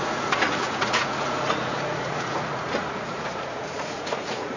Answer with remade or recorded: remade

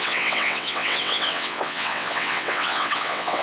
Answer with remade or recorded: remade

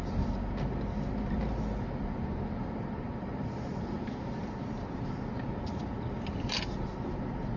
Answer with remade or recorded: recorded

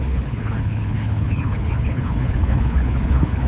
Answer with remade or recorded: remade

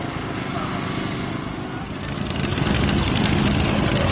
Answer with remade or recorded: recorded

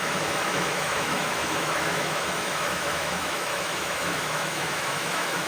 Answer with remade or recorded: remade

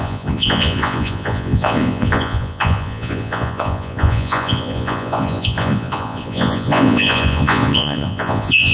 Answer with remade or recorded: remade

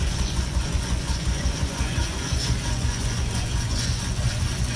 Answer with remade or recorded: remade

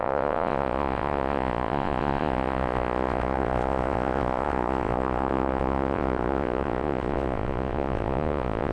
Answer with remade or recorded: remade